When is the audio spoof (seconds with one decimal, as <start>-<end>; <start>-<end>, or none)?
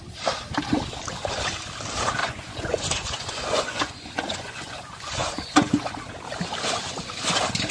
2.2-6.0